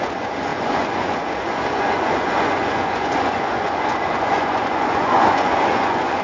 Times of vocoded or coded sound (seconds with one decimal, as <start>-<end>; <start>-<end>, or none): 0.0-6.2